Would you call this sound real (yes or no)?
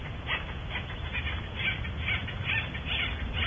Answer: yes